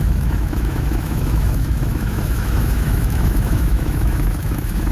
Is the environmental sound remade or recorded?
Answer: remade